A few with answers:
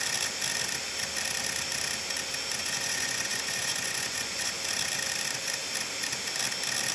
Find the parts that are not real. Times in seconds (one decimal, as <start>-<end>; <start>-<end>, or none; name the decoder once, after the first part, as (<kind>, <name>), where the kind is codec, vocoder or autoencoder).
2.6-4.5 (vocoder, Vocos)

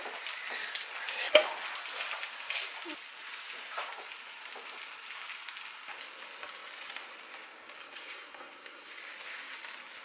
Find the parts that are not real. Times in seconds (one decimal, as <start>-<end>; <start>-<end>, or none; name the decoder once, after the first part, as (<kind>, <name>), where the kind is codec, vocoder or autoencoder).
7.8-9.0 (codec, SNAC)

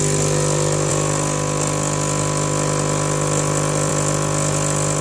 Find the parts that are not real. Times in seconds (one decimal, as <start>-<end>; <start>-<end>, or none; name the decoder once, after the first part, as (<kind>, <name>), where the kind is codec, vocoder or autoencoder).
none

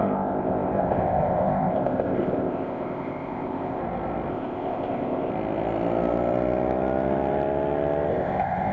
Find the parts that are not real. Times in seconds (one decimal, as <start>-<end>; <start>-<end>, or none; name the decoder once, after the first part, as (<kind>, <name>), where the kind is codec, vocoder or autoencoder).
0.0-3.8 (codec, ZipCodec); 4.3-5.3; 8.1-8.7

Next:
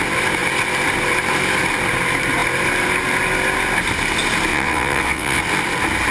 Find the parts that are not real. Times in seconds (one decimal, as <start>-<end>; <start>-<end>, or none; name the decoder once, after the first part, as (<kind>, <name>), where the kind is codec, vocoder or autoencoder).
4.5-5.4 (vocoder, WaveNeXt)